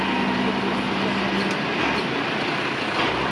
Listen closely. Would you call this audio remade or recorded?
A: recorded